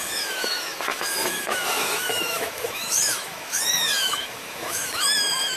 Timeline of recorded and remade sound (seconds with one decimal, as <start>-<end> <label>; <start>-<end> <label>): 0.0-5.6 remade